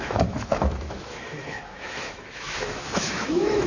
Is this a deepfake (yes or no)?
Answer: yes